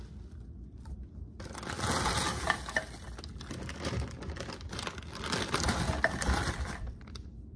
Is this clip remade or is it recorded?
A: recorded